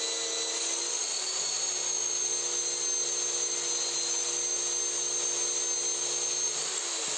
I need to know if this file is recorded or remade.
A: recorded